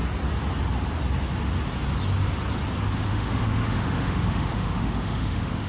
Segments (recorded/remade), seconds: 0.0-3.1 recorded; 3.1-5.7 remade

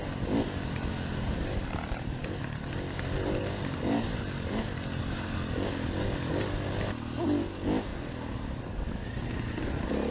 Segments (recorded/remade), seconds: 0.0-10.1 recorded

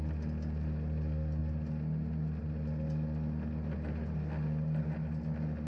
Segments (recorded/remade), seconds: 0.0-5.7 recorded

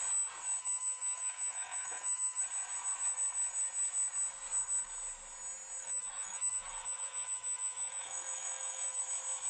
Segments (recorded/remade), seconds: 0.0-0.6 recorded; 0.6-2.4 remade; 2.4-5.8 recorded; 5.8-9.0 remade; 9.0-9.5 recorded

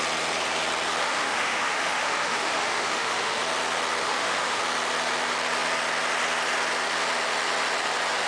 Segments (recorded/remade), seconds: 0.0-1.0 recorded; 1.0-3.4 remade; 3.4-4.0 recorded; 4.0-4.6 remade; 4.6-8.3 recorded

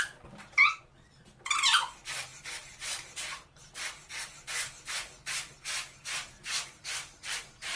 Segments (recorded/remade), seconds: 0.0-2.6 recorded; 2.6-3.6 remade; 3.6-6.8 recorded; 6.8-7.8 remade

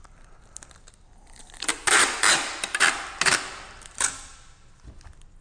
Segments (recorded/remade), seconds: 0.0-5.4 recorded

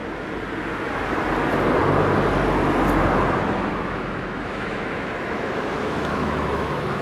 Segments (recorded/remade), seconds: 0.0-3.7 recorded; 3.7-7.0 remade